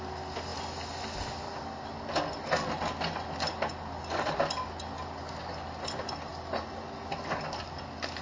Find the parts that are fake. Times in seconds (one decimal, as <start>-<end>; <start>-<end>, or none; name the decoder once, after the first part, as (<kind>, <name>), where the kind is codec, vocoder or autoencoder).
none